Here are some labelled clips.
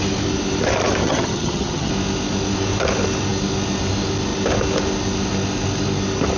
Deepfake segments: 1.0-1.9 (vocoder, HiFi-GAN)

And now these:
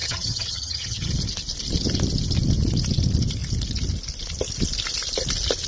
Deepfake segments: 0.0-1.1 (vocoder, HiFi-GAN)

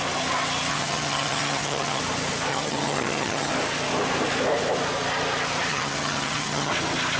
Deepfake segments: 0.7-2.0 (vocoder, HiFi-GAN); 2.5-3.5; 5.7-6.7

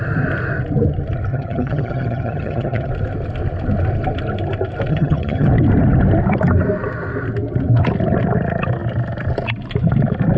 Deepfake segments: 1.3-2.9 (vocoder, HiFi-GAN); 4.9-5.5